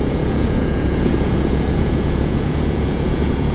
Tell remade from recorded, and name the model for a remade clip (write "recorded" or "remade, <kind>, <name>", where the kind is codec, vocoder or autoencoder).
remade, vocoder, Vocos